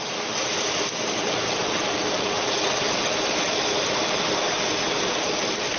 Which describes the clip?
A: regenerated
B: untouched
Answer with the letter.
B